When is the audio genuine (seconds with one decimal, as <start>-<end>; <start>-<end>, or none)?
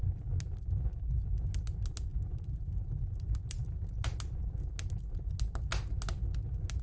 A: 0.0-6.8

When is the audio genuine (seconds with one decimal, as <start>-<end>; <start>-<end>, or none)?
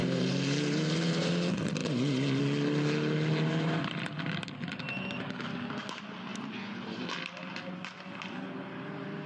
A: 1.3-1.8; 2.4-6.3; 7.1-9.3